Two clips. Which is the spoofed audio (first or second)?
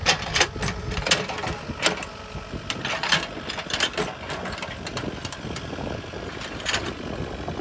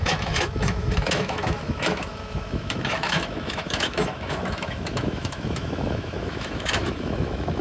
second